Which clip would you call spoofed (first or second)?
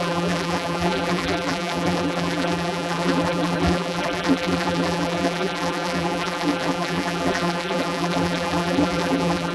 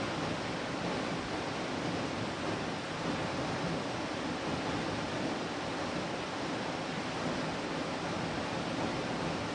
first